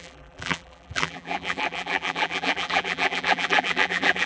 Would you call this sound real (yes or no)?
no